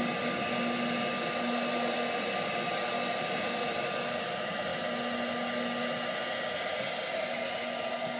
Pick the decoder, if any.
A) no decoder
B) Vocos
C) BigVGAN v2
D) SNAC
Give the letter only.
A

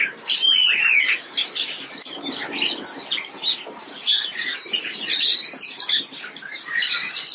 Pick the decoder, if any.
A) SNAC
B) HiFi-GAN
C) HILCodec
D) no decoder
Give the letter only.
D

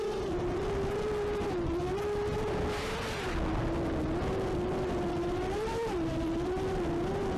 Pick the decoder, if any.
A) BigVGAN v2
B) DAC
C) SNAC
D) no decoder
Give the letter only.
D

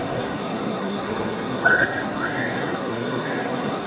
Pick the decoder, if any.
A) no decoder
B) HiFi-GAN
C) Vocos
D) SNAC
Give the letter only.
D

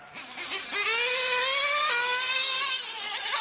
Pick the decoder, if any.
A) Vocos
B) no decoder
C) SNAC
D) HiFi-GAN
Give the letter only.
B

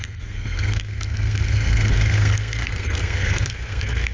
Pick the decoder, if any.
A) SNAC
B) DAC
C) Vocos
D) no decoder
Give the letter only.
A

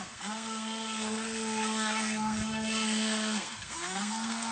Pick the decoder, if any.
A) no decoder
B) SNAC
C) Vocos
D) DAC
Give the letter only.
B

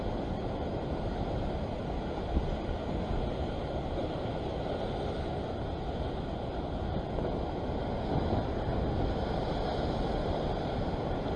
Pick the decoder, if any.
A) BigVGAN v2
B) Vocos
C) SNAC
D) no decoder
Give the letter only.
D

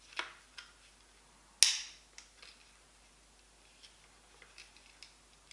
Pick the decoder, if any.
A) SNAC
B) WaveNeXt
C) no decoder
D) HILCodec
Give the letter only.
C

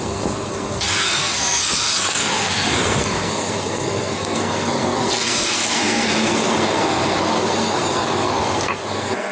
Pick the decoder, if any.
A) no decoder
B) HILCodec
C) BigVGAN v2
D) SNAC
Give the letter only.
D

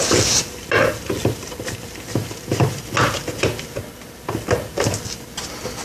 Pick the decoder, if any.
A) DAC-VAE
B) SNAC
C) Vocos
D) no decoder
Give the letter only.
D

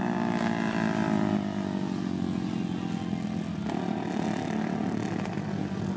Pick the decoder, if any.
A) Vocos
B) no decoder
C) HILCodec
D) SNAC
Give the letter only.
B